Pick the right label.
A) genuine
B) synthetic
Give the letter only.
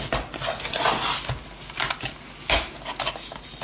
A